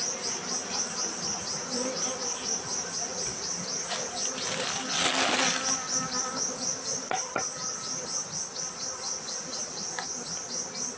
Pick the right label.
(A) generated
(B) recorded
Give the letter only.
B